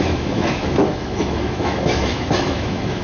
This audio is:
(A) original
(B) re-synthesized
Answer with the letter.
B